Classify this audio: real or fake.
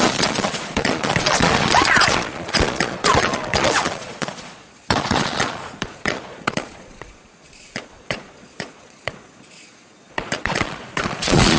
fake